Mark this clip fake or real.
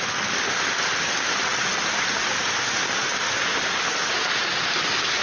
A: real